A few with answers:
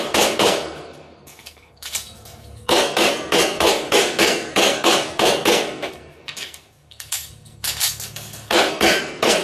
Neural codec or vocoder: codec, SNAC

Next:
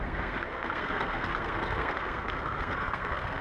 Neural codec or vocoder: codec, SNAC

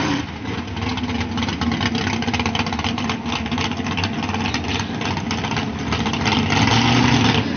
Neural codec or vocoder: none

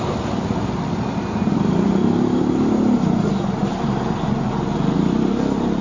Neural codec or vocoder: none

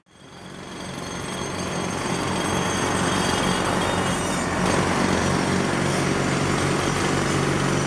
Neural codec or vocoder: none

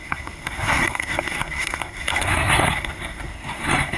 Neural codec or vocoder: codec, SNAC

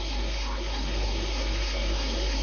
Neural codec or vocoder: codec, SNAC